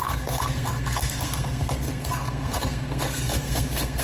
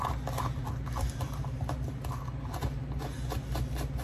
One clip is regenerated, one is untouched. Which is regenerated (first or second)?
first